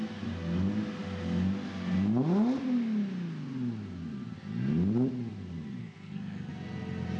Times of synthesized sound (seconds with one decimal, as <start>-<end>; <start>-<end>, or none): 5.8-6.5